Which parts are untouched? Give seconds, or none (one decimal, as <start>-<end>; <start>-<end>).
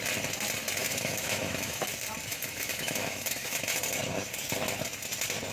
0.0-0.8; 1.8-2.3; 3.6-5.5